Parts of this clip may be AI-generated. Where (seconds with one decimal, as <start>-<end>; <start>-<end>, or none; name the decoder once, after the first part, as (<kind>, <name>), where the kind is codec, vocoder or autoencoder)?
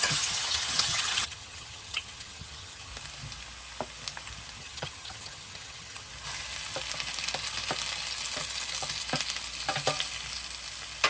0.0-2.9 (vocoder, HiFi-GAN); 4.6-6.1